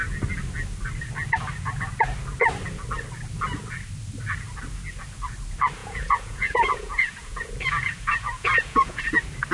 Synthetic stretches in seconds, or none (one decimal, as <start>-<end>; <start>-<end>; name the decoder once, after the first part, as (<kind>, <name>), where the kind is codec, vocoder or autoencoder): 5.8-9.0 (vocoder, Vocos)